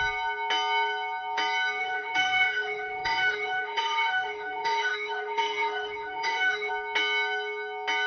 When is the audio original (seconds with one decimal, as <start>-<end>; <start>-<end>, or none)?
0.0-1.8; 6.7-8.1